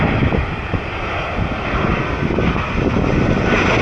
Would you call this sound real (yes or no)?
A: yes